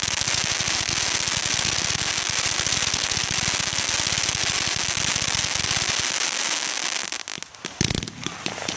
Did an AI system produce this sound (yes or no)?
no